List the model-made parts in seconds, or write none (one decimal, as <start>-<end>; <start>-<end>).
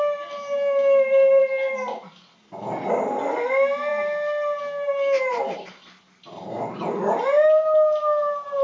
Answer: none